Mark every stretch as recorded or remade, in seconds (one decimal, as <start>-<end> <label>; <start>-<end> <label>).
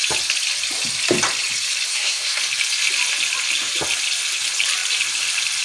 0.0-1.9 recorded; 1.9-2.4 remade; 2.4-5.6 recorded